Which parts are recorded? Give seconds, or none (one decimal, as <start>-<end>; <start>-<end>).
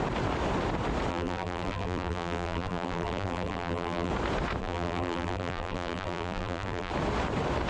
0.0-1.1; 4.1-4.6; 6.9-7.7